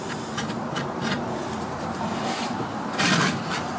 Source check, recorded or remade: recorded